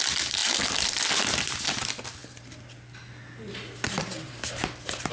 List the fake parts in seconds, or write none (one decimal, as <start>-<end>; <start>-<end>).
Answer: none